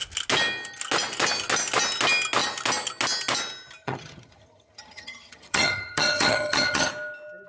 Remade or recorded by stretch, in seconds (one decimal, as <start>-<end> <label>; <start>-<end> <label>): 0.0-3.8 recorded; 3.8-6.9 remade; 6.9-7.5 recorded

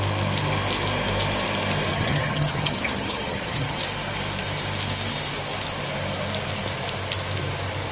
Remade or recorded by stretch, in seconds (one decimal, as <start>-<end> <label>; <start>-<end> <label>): 0.0-1.9 recorded; 1.9-3.8 remade; 3.8-7.9 recorded

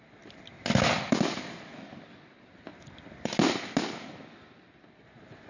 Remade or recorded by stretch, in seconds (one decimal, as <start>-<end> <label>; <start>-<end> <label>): 0.0-5.5 recorded

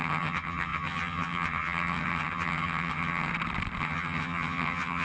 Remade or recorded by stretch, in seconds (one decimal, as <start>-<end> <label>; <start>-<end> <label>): 0.0-3.3 remade; 3.3-3.8 recorded; 3.8-5.0 remade

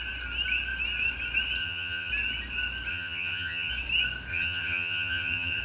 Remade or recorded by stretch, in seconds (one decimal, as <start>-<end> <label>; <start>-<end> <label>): 0.0-1.6 recorded; 1.6-2.1 remade; 2.1-2.9 recorded; 2.9-3.7 remade; 3.7-4.3 recorded; 4.3-5.6 remade

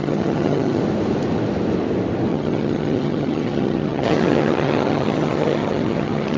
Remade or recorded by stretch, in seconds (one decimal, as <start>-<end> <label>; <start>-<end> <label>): 0.0-0.8 remade; 0.8-2.3 recorded; 2.3-6.4 remade

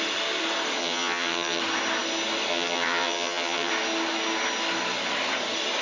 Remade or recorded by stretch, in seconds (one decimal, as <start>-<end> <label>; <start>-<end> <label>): 0.0-0.8 recorded; 0.8-1.6 remade; 1.6-2.5 recorded; 2.5-3.7 remade; 3.7-5.8 recorded